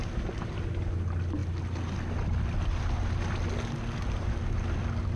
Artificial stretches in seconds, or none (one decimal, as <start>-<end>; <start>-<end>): none

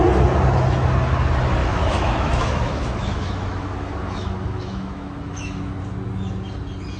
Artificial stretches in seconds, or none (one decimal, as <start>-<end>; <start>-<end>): 1.6-5.8

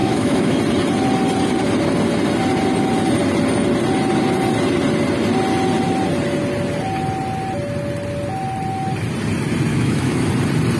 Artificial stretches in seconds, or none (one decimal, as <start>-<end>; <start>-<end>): 0.0-0.6; 9.7-10.3

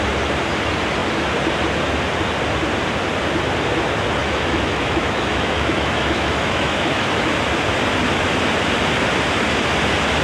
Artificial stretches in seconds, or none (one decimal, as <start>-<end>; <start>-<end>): 4.2-7.1

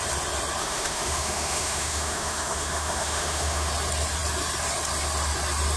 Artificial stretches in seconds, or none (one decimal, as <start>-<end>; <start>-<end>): 0.6-3.7

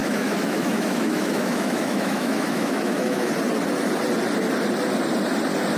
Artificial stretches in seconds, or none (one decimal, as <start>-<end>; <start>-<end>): 0.0-3.3

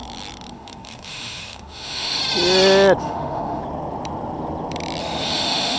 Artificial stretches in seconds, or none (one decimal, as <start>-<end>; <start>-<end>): 0.5-2.2; 3.0-3.6; 5.0-5.8